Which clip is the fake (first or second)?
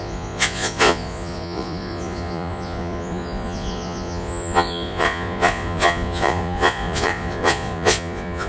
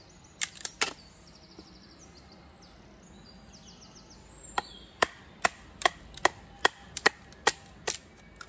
first